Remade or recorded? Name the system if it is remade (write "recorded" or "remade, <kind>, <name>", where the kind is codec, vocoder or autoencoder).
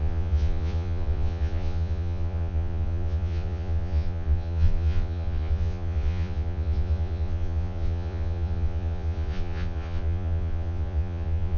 remade, vocoder, Vocos